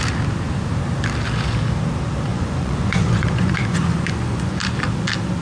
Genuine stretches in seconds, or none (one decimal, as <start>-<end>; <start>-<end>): 0.0-2.3; 4.6-5.4